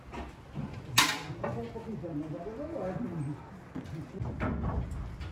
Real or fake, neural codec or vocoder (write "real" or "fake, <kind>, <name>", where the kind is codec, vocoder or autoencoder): real